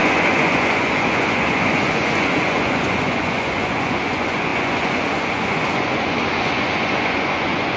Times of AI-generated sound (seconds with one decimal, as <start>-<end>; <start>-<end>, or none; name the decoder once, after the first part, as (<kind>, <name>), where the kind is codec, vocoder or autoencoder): 0.0-7.8 (vocoder, Vocos)